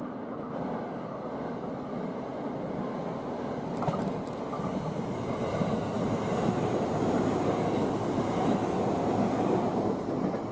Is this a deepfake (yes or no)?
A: no